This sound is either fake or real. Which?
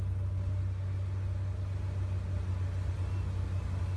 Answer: real